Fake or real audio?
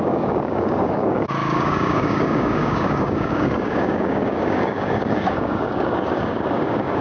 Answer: fake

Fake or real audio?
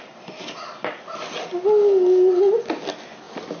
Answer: real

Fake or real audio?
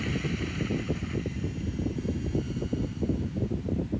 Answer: fake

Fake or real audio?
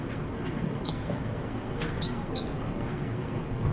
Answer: fake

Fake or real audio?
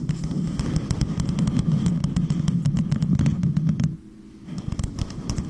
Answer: real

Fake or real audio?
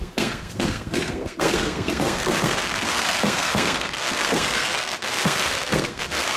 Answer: fake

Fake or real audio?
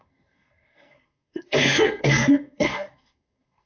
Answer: fake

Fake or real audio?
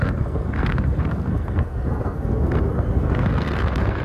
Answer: fake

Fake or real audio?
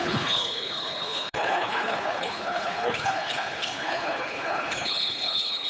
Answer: fake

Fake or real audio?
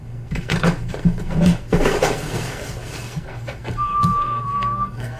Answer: fake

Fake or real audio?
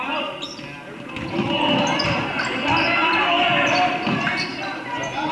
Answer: real